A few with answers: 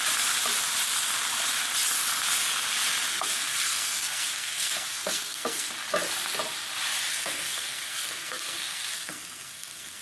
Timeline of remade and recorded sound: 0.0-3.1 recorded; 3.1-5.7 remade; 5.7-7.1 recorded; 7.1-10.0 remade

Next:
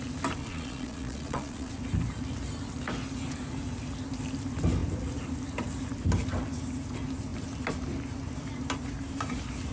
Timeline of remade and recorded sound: 0.0-0.4 recorded; 0.4-1.7 remade; 1.7-9.7 recorded

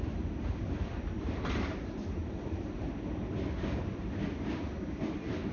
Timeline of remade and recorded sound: 0.0-5.5 recorded

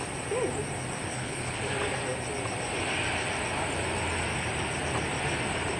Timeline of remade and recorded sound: 0.0-1.1 recorded; 1.1-1.6 remade; 1.6-5.8 recorded

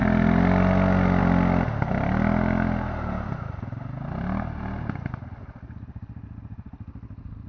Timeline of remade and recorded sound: 0.0-7.5 recorded

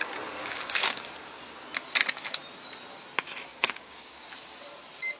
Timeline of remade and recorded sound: 0.0-0.4 recorded; 0.4-1.0 remade; 1.0-3.5 recorded; 3.5-4.3 remade; 4.3-5.2 recorded

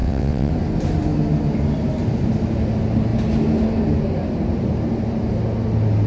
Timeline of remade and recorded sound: 0.0-0.5 remade; 0.5-6.1 recorded

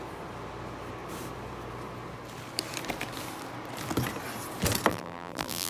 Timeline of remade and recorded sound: 0.0-4.9 recorded; 4.9-5.7 remade